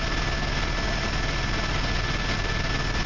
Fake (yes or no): no